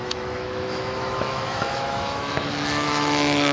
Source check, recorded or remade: remade